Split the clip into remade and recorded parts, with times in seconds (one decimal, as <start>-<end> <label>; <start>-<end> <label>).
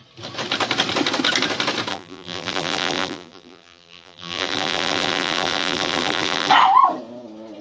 0.0-1.9 recorded; 1.9-6.5 remade; 6.5-7.6 recorded